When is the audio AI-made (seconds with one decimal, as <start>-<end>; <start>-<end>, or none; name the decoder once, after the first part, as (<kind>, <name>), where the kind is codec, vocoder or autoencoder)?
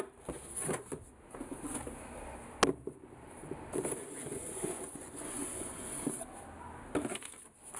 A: 4.0-5.9 (vocoder, Vocos)